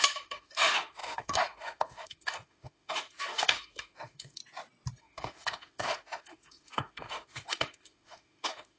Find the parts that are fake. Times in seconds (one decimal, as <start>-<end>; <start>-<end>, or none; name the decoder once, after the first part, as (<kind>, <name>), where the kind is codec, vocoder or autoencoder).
0.0-4.4 (autoencoder, DAC-VAE); 5.0-8.8